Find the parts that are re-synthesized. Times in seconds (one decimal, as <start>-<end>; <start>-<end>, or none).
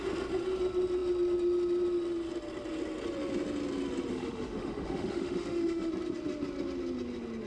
4.1-5.9